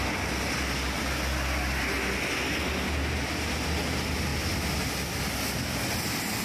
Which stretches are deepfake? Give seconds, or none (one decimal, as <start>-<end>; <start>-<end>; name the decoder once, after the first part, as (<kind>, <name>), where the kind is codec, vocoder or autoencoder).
none

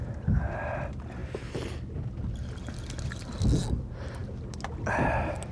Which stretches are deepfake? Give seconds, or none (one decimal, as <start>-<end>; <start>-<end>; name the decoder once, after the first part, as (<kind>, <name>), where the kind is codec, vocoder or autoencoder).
none

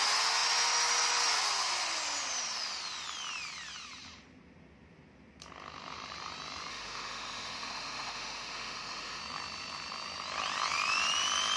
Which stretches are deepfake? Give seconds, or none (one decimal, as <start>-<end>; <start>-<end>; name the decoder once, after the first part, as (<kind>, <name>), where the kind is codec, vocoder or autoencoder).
6.7-9.2 (autoencoder, DAC-VAE)

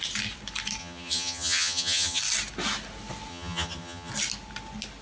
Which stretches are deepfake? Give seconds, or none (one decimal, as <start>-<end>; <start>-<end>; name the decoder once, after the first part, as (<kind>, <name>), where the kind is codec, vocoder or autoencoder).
0.8-2.2 (vocoder, HiFi-GAN); 3.3-4.1

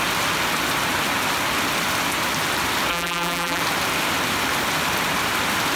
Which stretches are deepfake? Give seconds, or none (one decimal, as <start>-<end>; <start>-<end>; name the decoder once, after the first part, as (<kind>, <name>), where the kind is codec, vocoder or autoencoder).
2.9-3.6 (vocoder, BigVGAN v2)

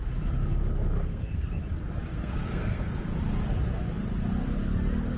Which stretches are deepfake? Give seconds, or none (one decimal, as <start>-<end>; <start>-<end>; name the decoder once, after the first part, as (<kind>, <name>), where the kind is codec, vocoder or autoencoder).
1.1-1.6 (codec, SNAC); 2.1-3.0

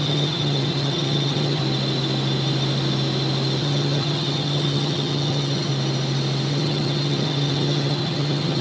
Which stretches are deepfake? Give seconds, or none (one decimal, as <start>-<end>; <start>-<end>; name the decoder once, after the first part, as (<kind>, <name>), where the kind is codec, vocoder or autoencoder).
0.0-1.6 (vocoder, HiFi-GAN); 3.6-5.7; 6.5-8.6

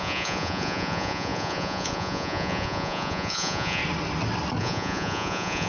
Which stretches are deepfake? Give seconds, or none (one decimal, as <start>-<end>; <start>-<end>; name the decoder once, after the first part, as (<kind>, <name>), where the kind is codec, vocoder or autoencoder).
0.0-3.8 (vocoder, Vocos); 4.6-5.7